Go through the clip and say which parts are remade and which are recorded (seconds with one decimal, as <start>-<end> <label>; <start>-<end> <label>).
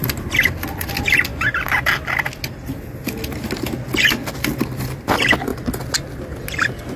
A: 0.0-7.0 recorded